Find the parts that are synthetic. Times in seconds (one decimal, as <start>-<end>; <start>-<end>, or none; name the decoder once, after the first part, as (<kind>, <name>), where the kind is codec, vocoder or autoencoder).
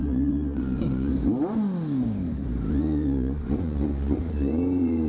0.0-1.1 (vocoder, Vocos); 2.7-5.1